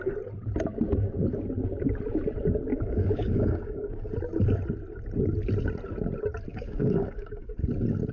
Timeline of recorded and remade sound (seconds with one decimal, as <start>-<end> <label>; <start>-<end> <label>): 0.0-2.7 recorded; 2.7-4.1 remade; 4.1-6.5 recorded; 6.5-7.5 remade; 7.5-8.1 recorded